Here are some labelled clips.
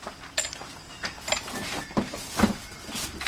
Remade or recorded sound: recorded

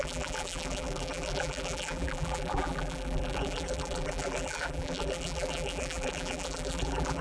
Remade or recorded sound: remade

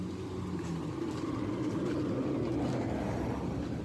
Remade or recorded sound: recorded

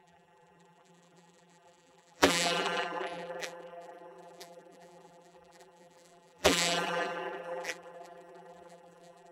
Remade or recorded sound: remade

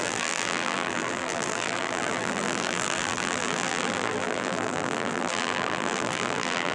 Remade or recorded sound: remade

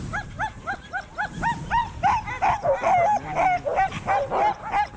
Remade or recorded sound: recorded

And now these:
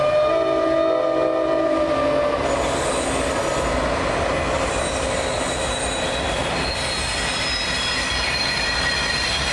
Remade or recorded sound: recorded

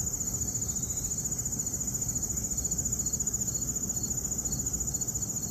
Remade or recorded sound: recorded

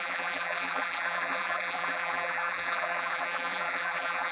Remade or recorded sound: remade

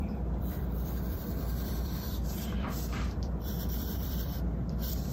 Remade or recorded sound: remade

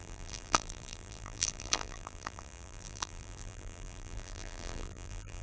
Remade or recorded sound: remade